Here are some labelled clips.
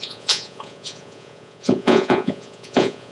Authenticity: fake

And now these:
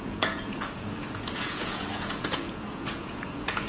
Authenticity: fake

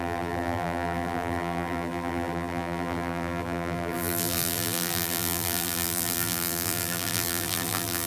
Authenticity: fake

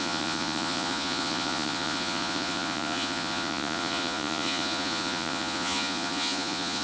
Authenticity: fake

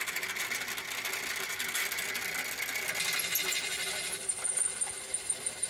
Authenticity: real